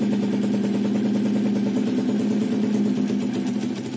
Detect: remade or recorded recorded